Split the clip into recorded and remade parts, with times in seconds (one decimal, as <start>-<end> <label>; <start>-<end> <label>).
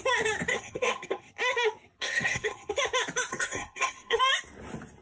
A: 0.0-0.5 recorded; 0.5-1.3 remade; 1.3-2.0 recorded; 2.0-2.7 remade; 2.7-3.3 recorded; 3.3-4.2 remade; 4.2-5.0 recorded